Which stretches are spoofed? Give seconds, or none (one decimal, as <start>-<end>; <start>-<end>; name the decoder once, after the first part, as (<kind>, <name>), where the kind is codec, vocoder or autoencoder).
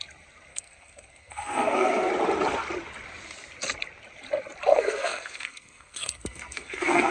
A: 0.5-2.1 (codec, SNAC); 4.7-7.1